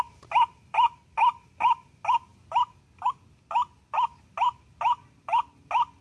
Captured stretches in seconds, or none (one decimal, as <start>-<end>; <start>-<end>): 0.0-6.0